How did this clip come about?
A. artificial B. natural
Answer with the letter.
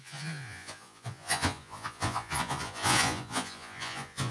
A